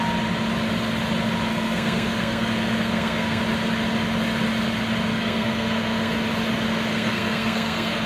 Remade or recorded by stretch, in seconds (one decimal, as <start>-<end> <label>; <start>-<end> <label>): 0.0-1.5 recorded; 1.5-3.4 remade; 3.4-5.1 recorded; 5.1-6.1 remade; 6.1-6.9 recorded; 6.9-8.1 remade